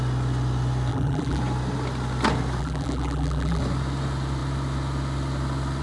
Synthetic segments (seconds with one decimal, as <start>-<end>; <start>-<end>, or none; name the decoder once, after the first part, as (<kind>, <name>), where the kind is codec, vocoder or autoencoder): 0.9-1.4 (vocoder, BigVGAN v2); 2.6-3.6